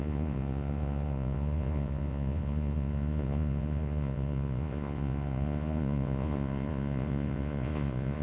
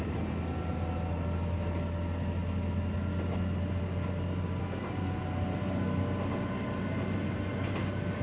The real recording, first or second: second